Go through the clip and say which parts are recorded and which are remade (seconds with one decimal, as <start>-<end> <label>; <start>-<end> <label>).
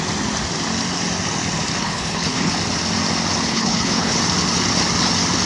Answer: 0.0-1.8 recorded; 1.8-2.5 remade; 2.5-3.5 recorded; 3.5-4.2 remade; 4.2-5.5 recorded